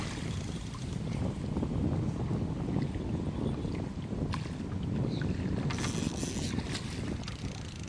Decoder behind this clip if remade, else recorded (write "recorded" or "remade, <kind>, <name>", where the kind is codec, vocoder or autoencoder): recorded